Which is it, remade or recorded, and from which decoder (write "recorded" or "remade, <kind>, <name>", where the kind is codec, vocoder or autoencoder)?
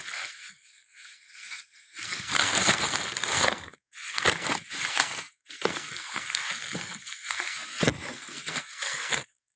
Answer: remade, codec, SNAC